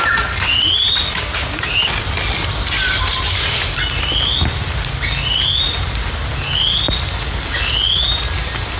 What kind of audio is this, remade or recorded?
recorded